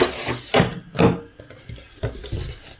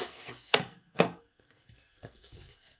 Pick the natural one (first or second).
first